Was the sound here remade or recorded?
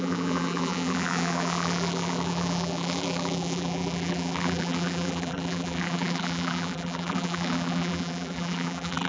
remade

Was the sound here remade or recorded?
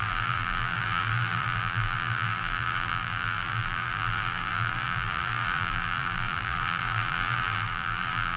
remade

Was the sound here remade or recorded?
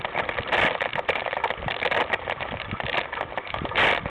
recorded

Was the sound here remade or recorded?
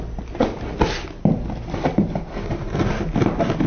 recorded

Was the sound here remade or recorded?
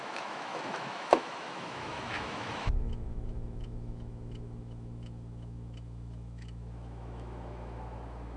remade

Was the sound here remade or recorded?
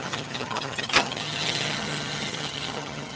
remade